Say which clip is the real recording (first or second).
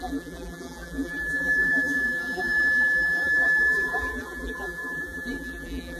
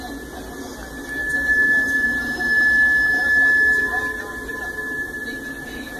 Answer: second